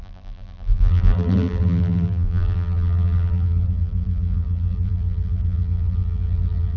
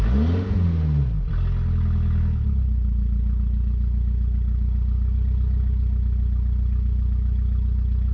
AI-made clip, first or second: first